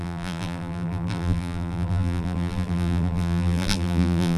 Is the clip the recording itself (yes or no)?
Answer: no